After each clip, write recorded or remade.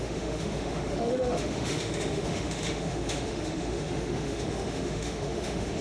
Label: remade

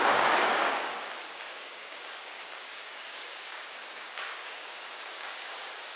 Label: remade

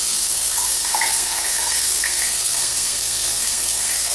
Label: remade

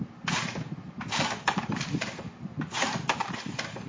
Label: remade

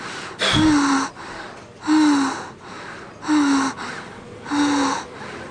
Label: recorded